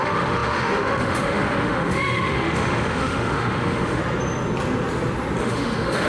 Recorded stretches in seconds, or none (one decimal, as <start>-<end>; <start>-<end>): 4.0-5.4